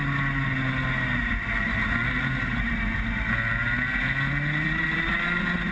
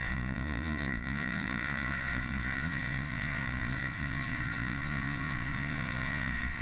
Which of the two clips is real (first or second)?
first